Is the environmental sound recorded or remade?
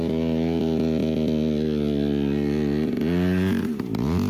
recorded